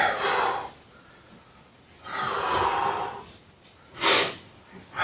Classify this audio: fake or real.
real